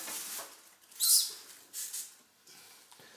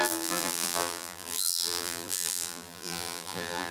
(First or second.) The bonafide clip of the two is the first